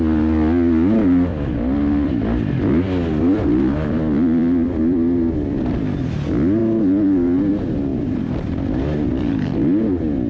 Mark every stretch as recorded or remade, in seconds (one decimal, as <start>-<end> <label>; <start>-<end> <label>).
0.0-1.3 recorded; 1.3-6.0 remade; 6.0-7.9 recorded; 7.9-8.7 remade; 8.7-10.3 recorded